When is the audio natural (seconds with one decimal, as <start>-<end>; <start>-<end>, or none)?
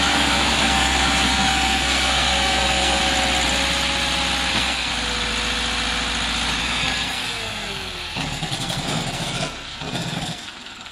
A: 3.0-4.5; 4.9-6.6